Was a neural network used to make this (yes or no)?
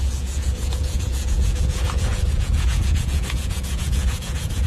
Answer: yes